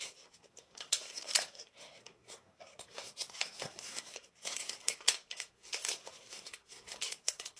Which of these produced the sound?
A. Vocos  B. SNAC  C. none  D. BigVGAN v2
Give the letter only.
B